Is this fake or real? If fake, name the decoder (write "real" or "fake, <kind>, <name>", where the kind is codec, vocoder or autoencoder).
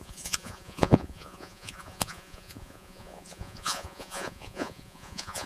fake, vocoder, Vocos